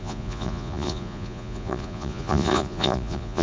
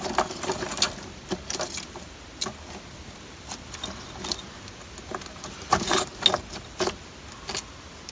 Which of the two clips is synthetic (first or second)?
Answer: first